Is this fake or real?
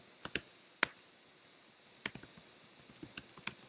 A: real